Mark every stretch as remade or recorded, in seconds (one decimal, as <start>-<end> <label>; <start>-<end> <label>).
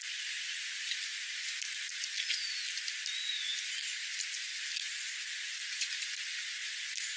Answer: 0.0-7.2 recorded